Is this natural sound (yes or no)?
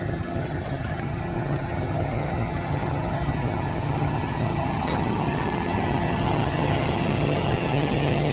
no